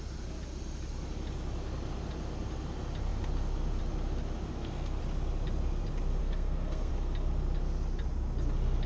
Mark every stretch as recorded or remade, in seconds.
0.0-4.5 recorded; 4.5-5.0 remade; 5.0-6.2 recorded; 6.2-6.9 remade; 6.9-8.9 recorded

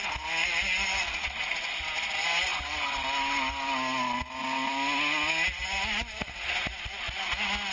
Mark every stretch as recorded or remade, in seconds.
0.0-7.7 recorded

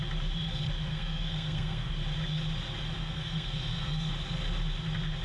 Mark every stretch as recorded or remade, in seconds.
0.0-0.9 recorded; 0.9-1.9 remade; 1.9-3.0 recorded; 3.0-4.1 remade; 4.1-5.2 recorded

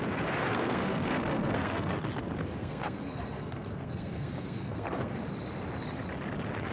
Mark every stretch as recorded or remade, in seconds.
0.0-0.5 recorded; 0.5-2.0 remade; 2.0-2.6 recorded; 2.6-5.2 remade; 5.2-6.7 recorded

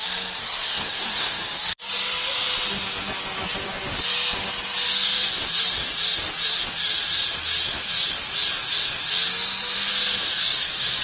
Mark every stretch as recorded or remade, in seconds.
0.0-0.4 recorded; 0.4-1.4 remade; 1.4-11.0 recorded

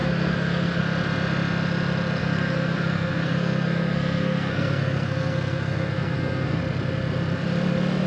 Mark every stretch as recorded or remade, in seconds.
0.0-0.8 remade; 0.8-2.2 recorded; 2.2-6.6 remade; 6.6-8.1 recorded

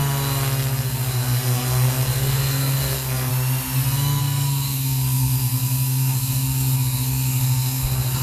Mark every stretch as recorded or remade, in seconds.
0.0-0.8 recorded; 0.8-3.3 remade; 3.3-4.2 recorded; 4.2-8.2 remade

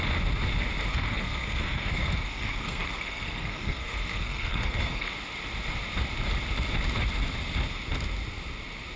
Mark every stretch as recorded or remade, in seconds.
0.0-0.9 recorded; 0.9-5.1 remade; 5.1-9.0 recorded